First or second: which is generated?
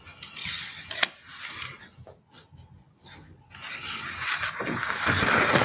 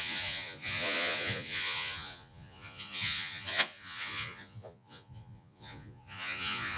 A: second